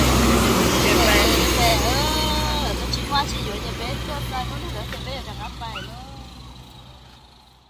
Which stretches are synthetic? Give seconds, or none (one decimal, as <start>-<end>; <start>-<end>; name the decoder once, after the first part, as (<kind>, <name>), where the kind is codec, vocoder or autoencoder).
3.1-3.9 (vocoder, BigVGAN v2)